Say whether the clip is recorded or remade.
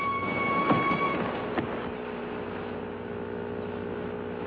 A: recorded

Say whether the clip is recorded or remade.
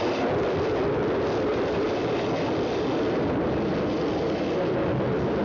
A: recorded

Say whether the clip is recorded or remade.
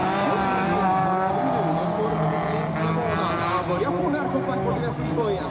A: recorded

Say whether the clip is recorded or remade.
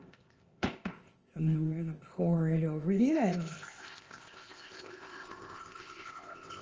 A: remade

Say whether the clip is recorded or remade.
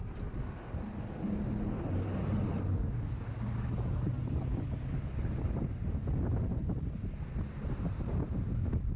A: recorded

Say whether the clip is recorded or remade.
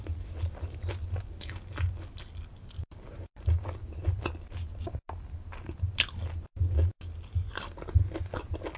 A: recorded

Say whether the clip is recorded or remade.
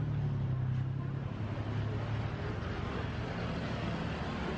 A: recorded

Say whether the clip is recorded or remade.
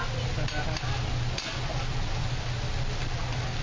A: recorded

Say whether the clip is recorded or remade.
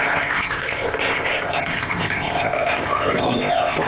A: remade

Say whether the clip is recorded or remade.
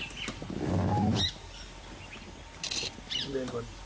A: recorded